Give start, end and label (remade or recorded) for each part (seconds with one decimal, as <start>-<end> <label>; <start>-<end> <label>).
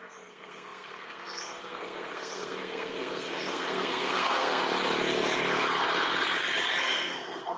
0.0-4.6 remade; 4.6-6.8 recorded; 6.8-7.6 remade